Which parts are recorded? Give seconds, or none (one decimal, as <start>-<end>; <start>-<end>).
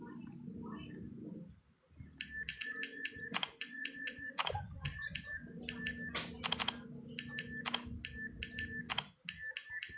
0.0-2.5; 5.2-10.0